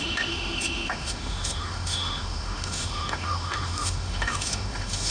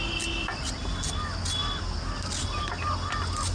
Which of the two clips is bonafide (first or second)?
second